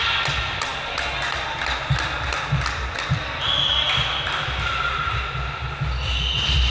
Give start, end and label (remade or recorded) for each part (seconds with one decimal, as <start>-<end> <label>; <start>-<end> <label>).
0.0-6.7 recorded